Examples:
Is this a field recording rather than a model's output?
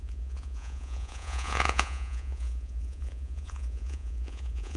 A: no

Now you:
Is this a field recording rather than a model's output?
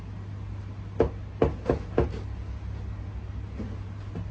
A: yes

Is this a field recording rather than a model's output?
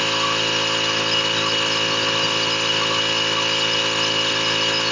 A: yes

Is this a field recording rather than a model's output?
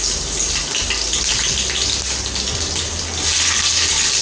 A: yes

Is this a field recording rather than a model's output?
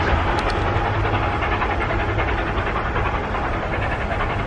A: yes